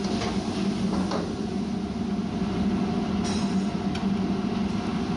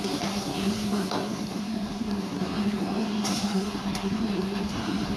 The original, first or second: first